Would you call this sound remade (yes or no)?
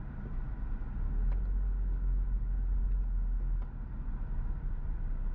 no